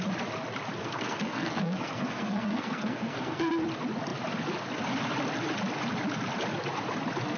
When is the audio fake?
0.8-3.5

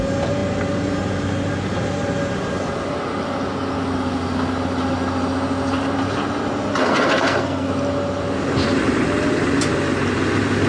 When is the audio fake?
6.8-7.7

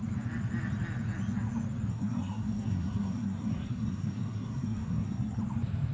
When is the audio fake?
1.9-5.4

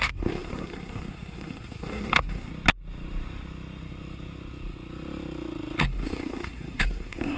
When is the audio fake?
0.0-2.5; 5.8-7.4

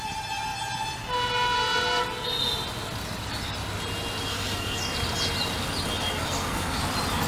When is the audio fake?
4.3-4.8; 6.1-6.8

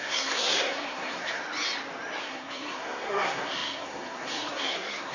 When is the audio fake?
0.0-1.4; 2.2-5.1